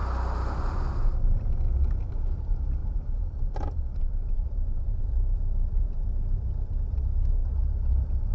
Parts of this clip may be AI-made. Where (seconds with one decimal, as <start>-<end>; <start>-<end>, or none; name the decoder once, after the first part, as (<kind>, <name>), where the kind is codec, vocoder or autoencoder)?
2.8-5.8 (vocoder, BigVGAN v2); 7.4-7.9